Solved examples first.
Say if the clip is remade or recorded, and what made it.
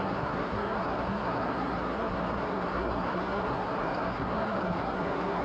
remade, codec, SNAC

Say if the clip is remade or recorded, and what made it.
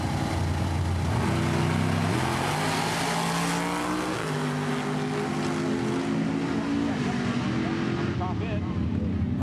recorded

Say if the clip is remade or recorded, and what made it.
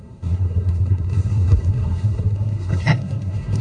remade, codec, SNAC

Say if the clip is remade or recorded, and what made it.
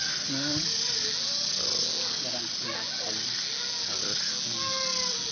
recorded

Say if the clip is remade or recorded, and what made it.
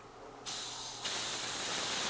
recorded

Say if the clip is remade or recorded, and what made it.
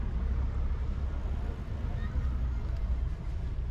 recorded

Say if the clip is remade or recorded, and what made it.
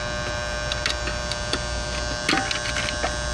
recorded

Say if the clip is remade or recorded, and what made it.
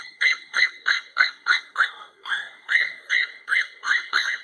remade, codec, SNAC